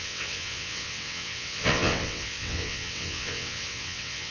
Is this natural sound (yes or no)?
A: no